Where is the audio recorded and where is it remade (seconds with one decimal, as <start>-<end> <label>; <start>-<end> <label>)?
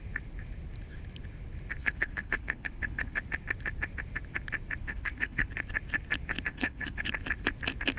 0.0-1.8 recorded; 1.8-3.2 remade; 3.2-4.8 recorded; 4.8-5.5 remade; 5.5-6.5 recorded; 6.5-7.1 remade; 7.1-8.0 recorded